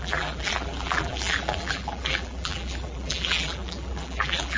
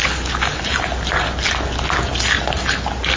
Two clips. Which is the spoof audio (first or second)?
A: first